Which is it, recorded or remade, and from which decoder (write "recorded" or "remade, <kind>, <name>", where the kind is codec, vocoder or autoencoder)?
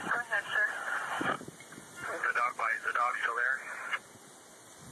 recorded